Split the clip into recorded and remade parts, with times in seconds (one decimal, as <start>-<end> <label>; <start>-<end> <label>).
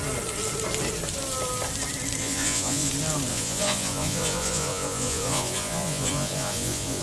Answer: 0.0-2.2 recorded; 2.2-2.9 remade; 2.9-3.3 recorded; 3.3-7.0 remade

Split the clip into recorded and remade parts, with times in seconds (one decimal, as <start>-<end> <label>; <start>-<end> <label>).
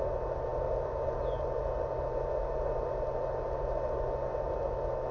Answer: 0.0-5.1 recorded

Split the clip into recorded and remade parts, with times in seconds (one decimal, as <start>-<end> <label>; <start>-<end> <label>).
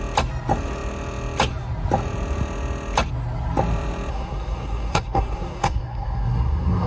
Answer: 0.0-4.1 recorded; 4.1-6.9 remade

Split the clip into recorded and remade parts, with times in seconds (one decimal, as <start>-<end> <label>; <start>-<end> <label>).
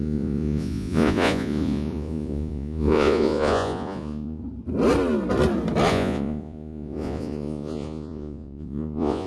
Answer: 0.0-4.4 remade; 4.4-5.9 recorded; 5.9-9.3 remade